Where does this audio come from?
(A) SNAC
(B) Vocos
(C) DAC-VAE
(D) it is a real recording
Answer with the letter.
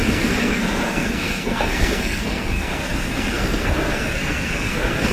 A